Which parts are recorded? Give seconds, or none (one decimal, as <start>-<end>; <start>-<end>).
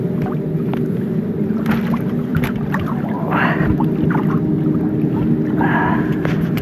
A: 0.0-6.6